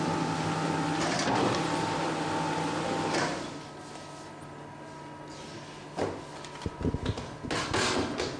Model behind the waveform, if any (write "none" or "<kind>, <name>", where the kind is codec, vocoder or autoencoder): none